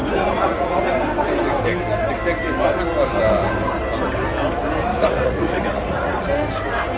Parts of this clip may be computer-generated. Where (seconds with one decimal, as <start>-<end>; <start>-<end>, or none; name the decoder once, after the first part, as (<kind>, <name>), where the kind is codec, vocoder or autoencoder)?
0.0-0.8 (vocoder, Vocos); 4.9-6.2